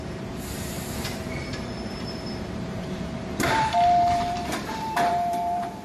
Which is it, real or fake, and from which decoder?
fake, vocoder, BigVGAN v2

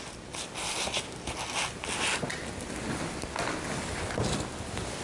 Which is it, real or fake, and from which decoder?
real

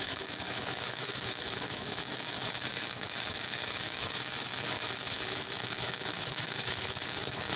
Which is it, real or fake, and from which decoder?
fake, autoencoder, DAC-VAE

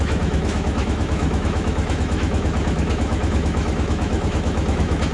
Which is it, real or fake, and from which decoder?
fake, autoencoder, DAC-VAE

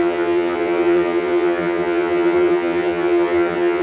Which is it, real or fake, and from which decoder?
fake, vocoder, HiFi-GAN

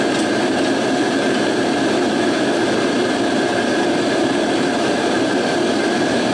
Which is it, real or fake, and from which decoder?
fake, vocoder, BigVGAN v2